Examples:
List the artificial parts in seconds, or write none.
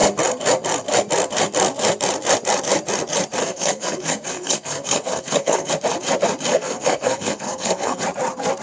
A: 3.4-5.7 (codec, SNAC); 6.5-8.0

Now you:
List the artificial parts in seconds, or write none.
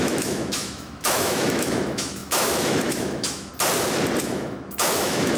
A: 0.0-3.5 (autoencoder, DAC-VAE); 4.2-5.4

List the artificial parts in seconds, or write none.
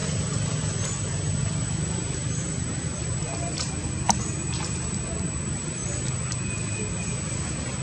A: none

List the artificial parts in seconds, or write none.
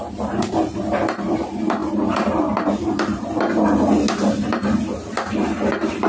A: none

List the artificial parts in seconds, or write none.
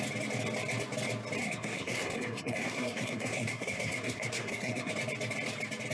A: 1.4-4.9 (codec, SNAC)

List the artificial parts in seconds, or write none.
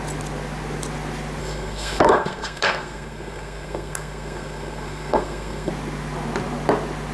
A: 1.4-5.7 (codec, SNAC)